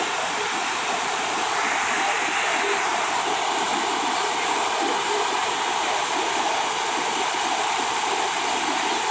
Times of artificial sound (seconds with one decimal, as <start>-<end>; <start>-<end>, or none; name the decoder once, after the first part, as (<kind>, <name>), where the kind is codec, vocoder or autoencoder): 0.0-2.9 (vocoder, BigVGAN v2); 7.0-9.1